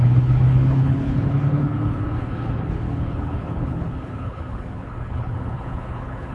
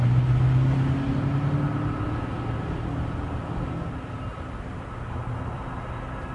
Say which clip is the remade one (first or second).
first